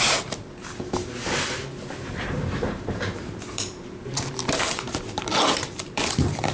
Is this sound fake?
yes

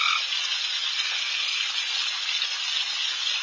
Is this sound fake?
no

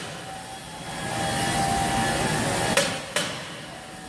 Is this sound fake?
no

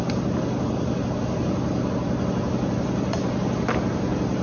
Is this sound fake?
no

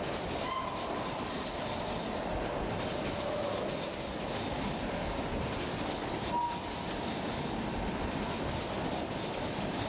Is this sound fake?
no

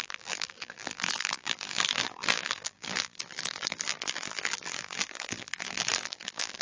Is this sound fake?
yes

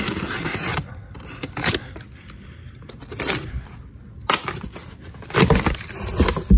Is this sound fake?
yes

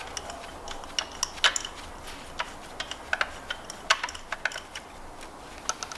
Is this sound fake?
no